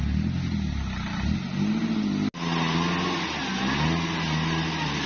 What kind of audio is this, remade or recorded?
recorded